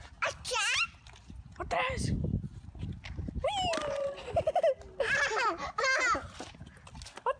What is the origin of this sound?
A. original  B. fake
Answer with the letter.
A